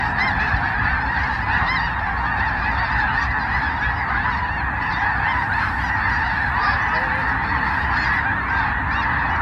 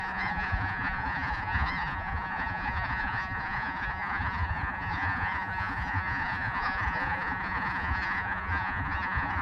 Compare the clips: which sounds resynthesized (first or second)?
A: second